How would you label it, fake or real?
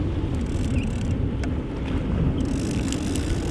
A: real